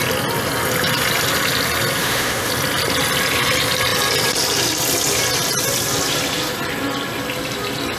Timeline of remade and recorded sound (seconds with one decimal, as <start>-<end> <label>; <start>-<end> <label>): 0.0-2.0 recorded; 2.0-2.5 remade; 2.5-8.0 recorded